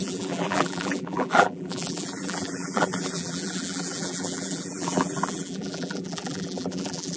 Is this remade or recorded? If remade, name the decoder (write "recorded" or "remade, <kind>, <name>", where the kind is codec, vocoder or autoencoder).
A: remade, vocoder, BigVGAN v2